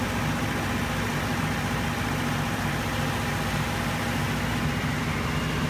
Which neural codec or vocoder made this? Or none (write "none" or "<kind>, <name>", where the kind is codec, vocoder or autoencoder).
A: none